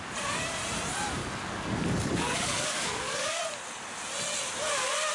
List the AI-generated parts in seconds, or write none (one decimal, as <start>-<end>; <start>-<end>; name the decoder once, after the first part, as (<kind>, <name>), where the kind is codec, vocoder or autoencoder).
1.2-3.4 (codec, DAC)